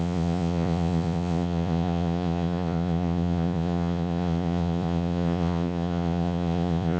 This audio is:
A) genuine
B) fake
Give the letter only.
B